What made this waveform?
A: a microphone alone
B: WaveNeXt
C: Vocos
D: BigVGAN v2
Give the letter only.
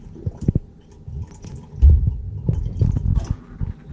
A